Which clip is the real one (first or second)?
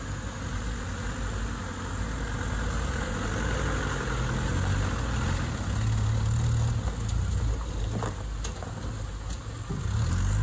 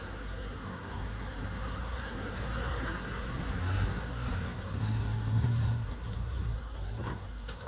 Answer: first